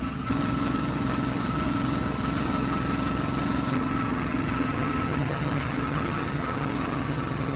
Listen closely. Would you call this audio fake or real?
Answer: fake